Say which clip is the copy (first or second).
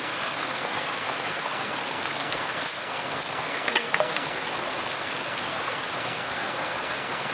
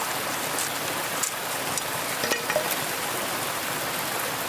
first